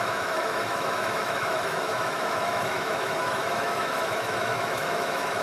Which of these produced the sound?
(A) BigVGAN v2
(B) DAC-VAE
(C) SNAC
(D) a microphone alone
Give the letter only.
B